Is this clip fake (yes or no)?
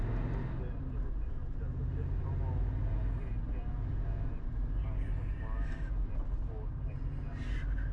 no